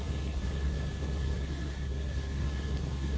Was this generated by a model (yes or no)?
yes